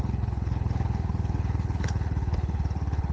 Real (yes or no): no